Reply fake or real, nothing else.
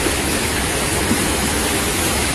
fake